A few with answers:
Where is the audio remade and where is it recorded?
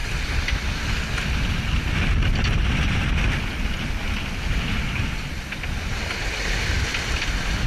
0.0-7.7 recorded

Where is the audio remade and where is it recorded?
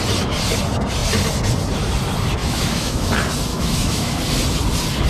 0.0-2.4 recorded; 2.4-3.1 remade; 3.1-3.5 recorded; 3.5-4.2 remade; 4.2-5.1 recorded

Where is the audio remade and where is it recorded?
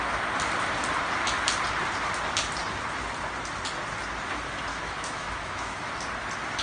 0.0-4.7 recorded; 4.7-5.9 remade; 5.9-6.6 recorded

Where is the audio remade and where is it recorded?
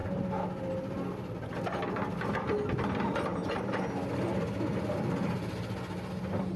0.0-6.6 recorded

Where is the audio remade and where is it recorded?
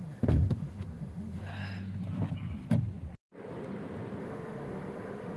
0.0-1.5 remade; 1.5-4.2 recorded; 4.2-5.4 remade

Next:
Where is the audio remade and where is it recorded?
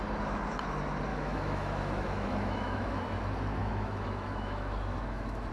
0.0-1.1 recorded; 1.1-3.0 remade; 3.0-3.6 recorded; 3.6-5.5 remade